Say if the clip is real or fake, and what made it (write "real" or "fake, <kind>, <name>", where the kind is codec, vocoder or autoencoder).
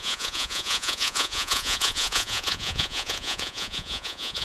fake, vocoder, Vocos